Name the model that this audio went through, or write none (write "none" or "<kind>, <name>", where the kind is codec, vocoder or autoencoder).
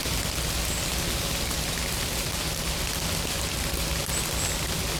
none